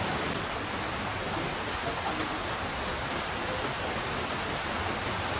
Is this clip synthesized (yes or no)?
no